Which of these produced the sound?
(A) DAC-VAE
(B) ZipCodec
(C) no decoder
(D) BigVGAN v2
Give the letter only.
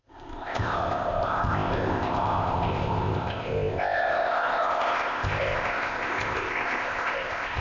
B